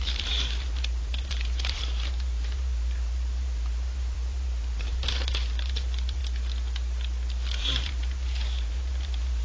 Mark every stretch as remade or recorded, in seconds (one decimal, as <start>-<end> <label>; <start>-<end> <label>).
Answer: 0.0-6.2 remade; 6.2-7.6 recorded; 7.6-9.4 remade